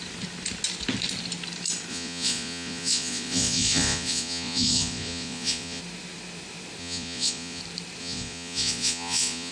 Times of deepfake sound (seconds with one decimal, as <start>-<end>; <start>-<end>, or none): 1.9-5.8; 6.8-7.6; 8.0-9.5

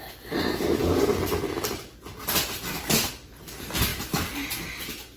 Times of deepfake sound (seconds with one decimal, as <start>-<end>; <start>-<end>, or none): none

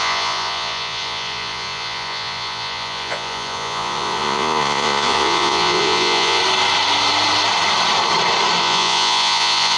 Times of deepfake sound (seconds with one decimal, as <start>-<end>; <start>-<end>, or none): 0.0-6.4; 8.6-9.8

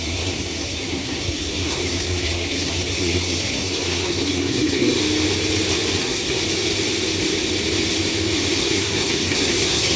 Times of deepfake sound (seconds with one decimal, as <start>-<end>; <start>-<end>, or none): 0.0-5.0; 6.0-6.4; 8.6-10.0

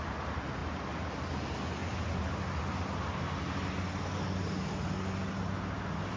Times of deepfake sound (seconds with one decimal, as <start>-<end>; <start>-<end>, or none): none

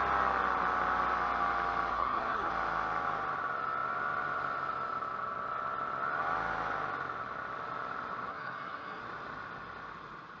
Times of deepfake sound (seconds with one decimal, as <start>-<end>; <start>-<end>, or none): 1.9-2.5; 8.3-9.0